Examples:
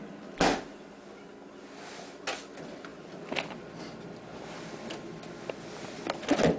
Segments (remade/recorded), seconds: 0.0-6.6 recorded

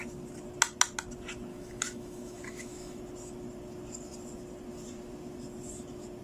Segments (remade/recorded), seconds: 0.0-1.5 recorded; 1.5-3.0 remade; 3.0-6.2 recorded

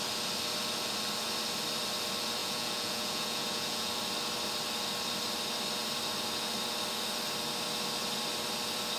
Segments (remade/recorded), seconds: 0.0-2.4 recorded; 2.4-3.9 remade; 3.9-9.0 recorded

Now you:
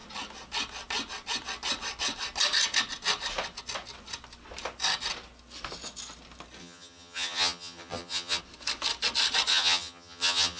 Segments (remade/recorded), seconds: 0.0-6.6 recorded; 6.6-8.4 remade; 8.4-9.5 recorded; 9.5-10.6 remade

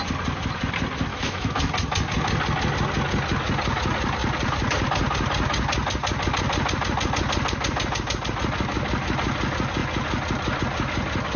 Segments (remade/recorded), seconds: 0.0-1.1 recorded; 1.1-1.6 remade; 1.6-11.4 recorded

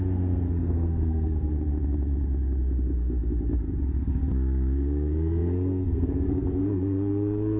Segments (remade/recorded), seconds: 0.0-1.5 remade; 1.5-4.0 recorded; 4.0-7.6 remade